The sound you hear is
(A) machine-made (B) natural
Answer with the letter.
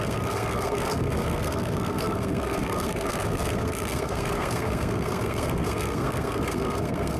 A